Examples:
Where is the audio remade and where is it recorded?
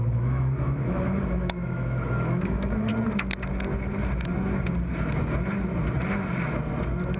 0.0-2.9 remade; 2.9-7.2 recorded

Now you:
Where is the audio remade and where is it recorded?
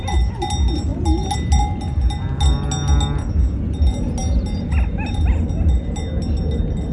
0.0-6.9 recorded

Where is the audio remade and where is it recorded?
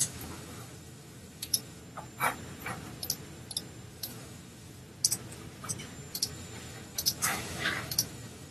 0.0-1.8 remade; 1.8-3.9 recorded; 3.9-4.8 remade; 4.8-6.1 recorded; 6.1-8.5 remade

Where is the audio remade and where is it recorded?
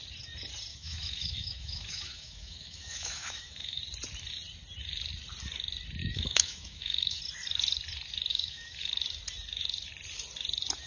0.0-0.7 recorded; 0.7-3.8 remade; 3.8-6.0 recorded; 6.0-7.2 remade; 7.2-8.3 recorded; 8.3-8.9 remade; 8.9-10.9 recorded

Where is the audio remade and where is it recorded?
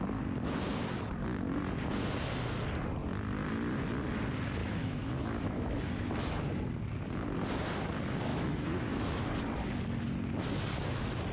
0.0-4.6 recorded; 4.6-6.4 remade; 6.4-8.3 recorded; 8.3-9.3 remade; 9.3-11.3 recorded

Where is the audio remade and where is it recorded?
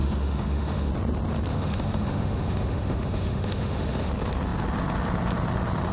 0.0-0.9 remade; 0.9-1.5 recorded; 1.5-4.1 remade; 4.1-5.9 recorded